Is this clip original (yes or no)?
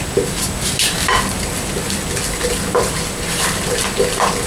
yes